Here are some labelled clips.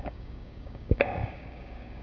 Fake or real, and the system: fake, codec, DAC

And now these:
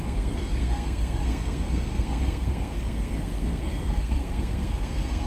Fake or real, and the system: fake, codec, SNAC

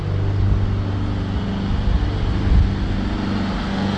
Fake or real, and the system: real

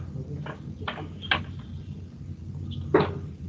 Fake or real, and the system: real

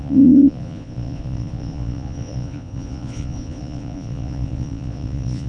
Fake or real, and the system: fake, vocoder, Vocos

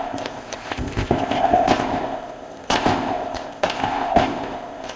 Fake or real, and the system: fake, codec, ZipCodec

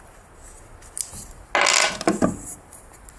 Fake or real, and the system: real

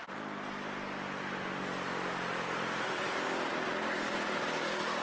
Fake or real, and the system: real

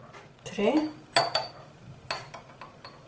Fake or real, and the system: real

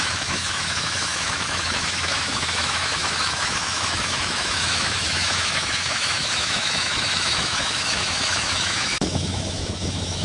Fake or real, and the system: fake, autoencoder, DAC-VAE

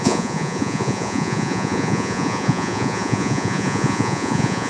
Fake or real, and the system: fake, vocoder, Vocos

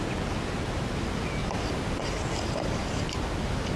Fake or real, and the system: real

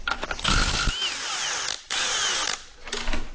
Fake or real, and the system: real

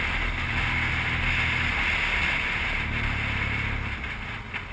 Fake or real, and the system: real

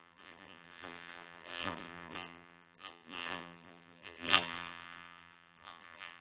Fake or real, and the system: fake, vocoder, BigVGAN v2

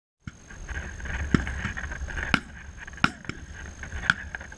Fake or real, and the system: real